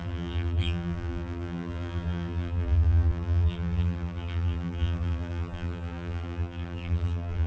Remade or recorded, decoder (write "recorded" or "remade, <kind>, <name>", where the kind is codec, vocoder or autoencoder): remade, vocoder, BigVGAN v2